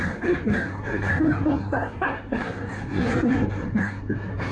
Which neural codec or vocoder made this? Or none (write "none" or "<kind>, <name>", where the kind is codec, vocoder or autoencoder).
codec, SNAC